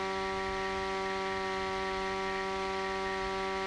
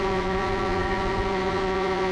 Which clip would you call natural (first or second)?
first